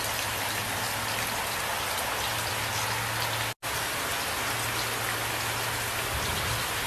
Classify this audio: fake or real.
real